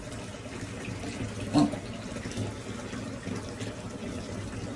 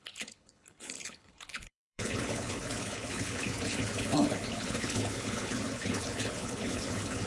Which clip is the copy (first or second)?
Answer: second